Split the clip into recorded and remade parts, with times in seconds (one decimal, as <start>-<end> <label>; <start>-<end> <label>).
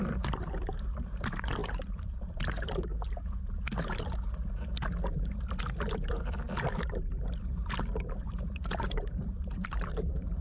0.0-0.6 remade; 0.6-1.2 recorded; 1.2-2.9 remade; 2.9-7.8 recorded; 7.8-10.4 remade